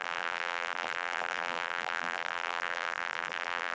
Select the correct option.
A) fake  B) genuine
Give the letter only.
A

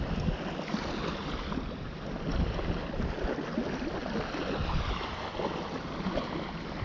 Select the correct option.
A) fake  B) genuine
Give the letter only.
B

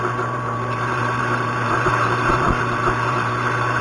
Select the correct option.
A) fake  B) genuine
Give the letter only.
A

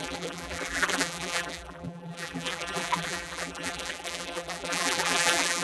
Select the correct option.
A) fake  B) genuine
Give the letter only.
A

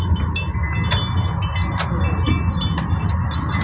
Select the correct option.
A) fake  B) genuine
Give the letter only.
B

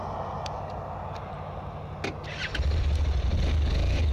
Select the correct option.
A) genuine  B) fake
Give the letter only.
A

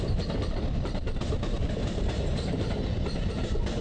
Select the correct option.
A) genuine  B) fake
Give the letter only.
B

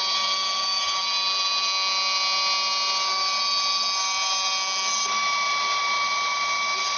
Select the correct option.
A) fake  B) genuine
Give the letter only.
B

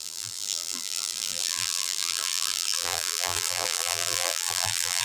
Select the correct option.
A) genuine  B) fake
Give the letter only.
B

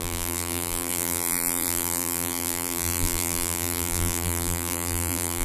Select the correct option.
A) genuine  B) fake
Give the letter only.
B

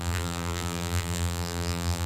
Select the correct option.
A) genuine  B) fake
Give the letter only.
B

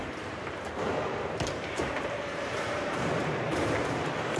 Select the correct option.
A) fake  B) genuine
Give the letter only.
A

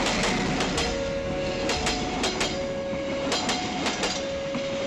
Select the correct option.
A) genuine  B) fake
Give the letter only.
A